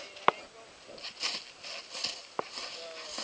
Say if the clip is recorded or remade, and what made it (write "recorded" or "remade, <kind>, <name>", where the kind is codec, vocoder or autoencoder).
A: recorded